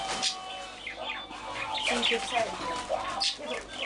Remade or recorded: recorded